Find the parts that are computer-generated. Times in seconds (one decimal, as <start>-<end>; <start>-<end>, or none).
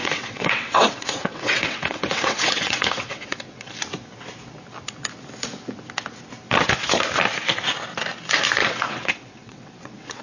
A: 0.0-3.7; 8.6-10.2